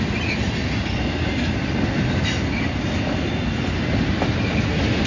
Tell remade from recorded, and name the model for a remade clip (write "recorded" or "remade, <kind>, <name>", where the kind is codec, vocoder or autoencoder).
recorded